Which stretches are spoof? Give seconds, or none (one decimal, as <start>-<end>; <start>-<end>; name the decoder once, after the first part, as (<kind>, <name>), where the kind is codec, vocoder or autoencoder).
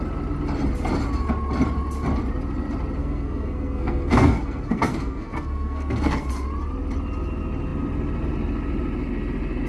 3.0-6.3 (codec, SNAC)